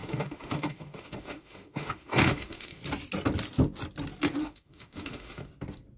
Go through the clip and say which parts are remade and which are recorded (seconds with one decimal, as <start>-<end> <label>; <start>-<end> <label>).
0.0-2.8 remade; 2.8-4.4 recorded; 4.4-5.5 remade; 5.5-6.0 recorded